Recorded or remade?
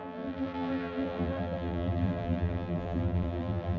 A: remade